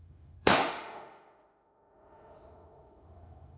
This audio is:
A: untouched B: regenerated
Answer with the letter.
B